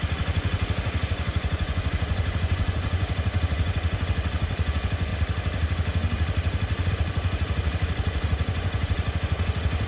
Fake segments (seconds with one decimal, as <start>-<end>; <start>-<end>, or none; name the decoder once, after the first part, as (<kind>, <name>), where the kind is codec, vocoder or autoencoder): 0.0-5.1 (vocoder, Vocos); 6.9-9.9